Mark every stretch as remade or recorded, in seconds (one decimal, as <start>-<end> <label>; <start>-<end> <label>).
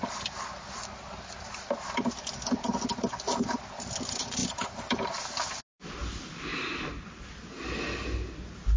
0.0-1.6 remade; 1.6-4.4 recorded; 4.4-5.6 remade; 5.6-6.5 recorded; 6.5-7.3 remade; 7.3-8.8 recorded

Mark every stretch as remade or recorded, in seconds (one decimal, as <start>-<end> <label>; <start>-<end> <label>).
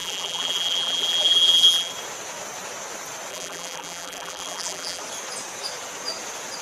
0.0-1.9 remade; 1.9-3.3 recorded; 3.3-5.0 remade; 5.0-6.6 recorded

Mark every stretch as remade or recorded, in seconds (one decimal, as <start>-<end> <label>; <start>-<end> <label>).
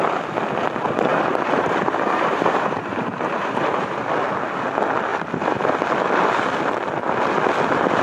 0.0-1.1 recorded; 1.1-4.0 remade; 4.0-8.0 recorded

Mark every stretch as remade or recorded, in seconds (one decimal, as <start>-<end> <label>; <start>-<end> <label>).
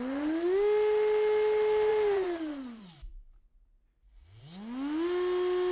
0.0-1.9 recorded; 1.9-3.3 remade; 3.3-5.7 recorded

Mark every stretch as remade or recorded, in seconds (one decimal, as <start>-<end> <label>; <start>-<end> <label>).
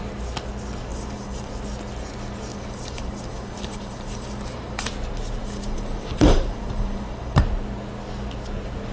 0.0-0.9 recorded; 0.9-1.5 remade; 1.5-2.5 recorded; 2.5-4.9 remade; 4.9-5.4 recorded; 5.4-7.4 remade; 7.4-8.9 recorded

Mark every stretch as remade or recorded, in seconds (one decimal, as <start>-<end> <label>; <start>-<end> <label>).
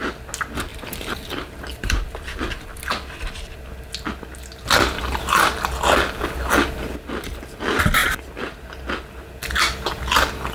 0.0-0.7 recorded; 0.7-3.6 remade; 3.6-8.0 recorded; 8.0-8.7 remade; 8.7-10.5 recorded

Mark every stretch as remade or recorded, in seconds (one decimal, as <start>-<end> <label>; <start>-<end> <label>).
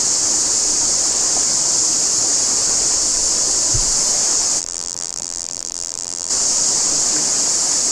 0.0-4.6 recorded; 4.6-6.3 remade; 6.3-7.9 recorded